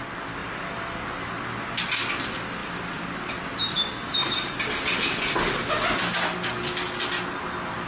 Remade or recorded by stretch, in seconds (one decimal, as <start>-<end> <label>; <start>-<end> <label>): 0.0-7.9 recorded